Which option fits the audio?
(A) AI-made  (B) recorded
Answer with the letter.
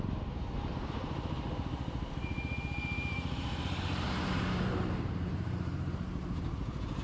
A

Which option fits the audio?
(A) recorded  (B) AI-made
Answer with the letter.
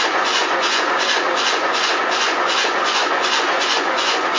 B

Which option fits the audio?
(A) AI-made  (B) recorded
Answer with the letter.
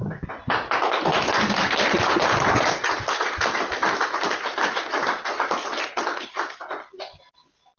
B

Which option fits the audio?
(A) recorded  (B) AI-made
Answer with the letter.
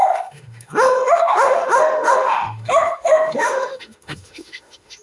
B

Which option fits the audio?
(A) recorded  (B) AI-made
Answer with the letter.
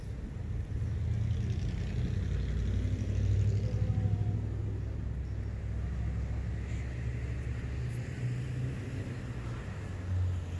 A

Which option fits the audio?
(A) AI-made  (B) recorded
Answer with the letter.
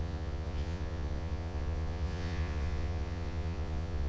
A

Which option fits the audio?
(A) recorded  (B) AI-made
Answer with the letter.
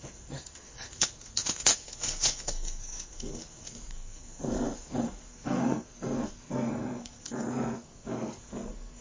B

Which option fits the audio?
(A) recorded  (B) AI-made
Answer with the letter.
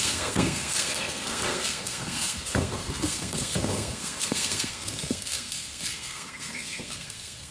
B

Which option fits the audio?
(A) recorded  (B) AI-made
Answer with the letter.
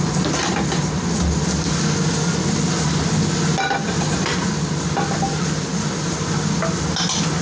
A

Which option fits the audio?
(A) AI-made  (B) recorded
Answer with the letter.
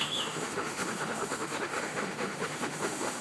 A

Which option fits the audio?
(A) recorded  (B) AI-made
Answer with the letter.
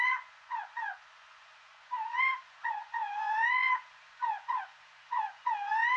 B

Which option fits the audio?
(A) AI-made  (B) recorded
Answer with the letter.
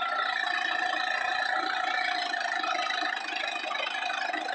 B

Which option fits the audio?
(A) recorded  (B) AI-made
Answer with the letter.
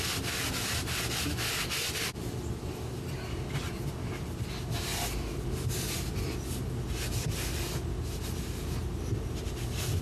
A